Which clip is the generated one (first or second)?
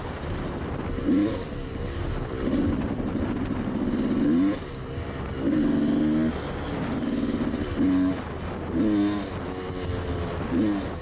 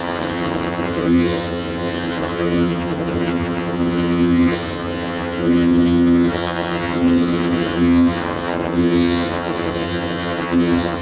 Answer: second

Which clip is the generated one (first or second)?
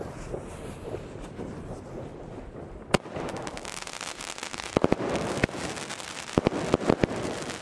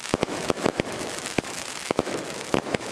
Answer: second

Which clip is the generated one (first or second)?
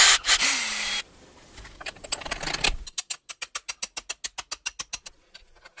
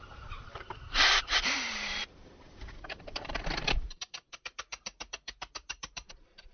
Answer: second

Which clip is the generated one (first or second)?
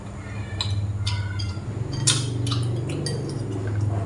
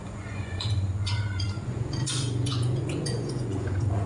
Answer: second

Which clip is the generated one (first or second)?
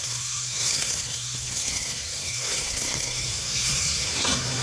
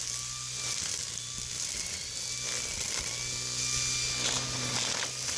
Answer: first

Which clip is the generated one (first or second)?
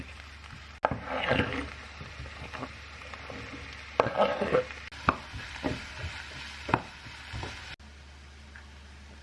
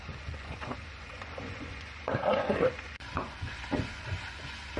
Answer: second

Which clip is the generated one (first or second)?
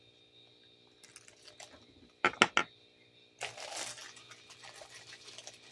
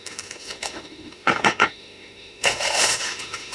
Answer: second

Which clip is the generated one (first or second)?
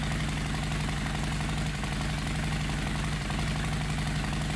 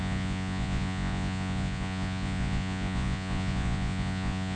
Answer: second